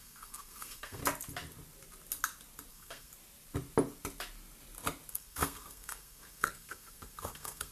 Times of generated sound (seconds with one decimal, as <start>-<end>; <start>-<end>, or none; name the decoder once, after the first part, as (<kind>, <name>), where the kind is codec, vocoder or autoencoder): 0.0-1.0 (codec, SNAC); 2.7-3.1; 5.1-7.7